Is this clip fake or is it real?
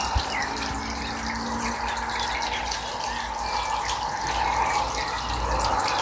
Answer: real